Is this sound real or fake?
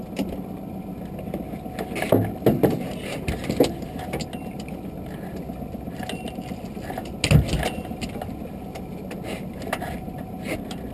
real